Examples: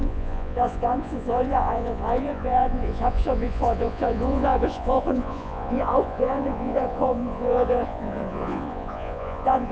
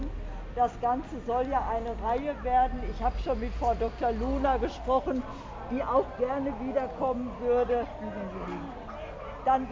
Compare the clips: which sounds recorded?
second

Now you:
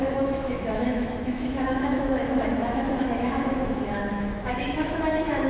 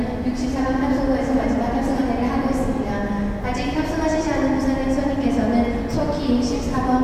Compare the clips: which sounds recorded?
second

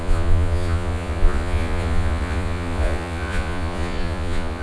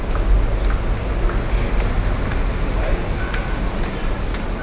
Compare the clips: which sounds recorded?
second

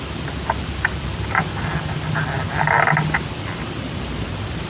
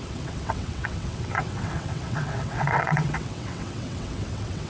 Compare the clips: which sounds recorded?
first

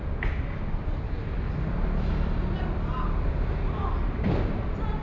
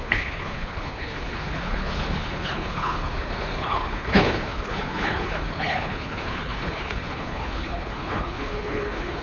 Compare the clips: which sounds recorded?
first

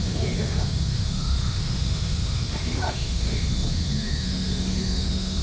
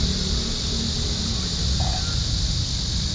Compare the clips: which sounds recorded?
second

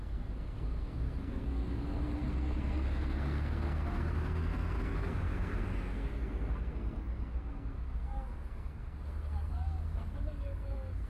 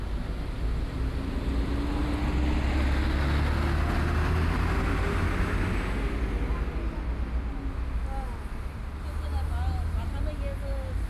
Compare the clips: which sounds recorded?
second